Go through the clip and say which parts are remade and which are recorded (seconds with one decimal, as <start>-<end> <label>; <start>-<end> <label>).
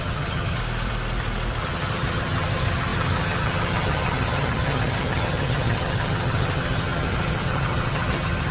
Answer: 0.0-0.6 remade; 0.6-1.6 recorded; 1.6-8.5 remade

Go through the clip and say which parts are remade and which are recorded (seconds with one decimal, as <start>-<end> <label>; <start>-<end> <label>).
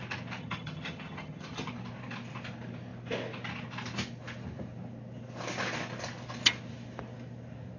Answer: 0.0-0.4 recorded; 0.4-1.7 remade; 1.7-7.8 recorded